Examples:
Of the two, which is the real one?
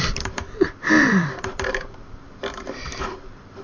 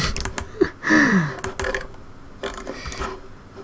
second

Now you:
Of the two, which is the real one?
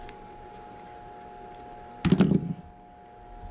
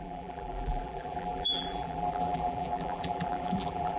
first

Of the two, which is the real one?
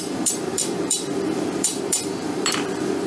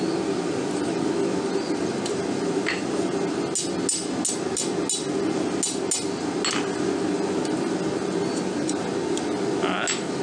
second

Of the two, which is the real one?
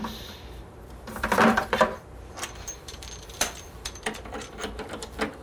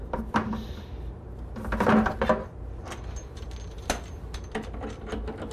second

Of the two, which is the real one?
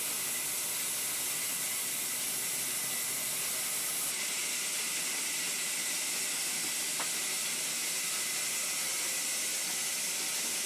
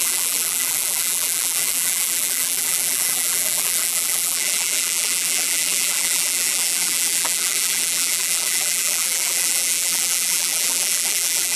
first